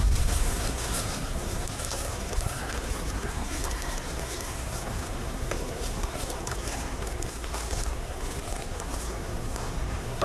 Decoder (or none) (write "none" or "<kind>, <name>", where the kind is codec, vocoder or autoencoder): codec, SNAC